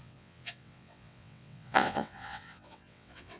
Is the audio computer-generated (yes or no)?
yes